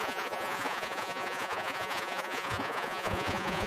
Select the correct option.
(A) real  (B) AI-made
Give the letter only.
B